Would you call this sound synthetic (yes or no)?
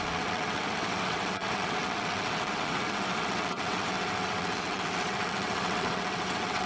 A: yes